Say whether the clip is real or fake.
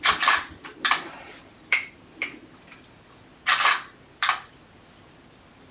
fake